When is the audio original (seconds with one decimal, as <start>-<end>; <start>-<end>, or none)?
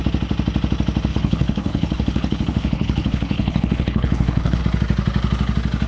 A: 0.0-1.1; 4.6-5.9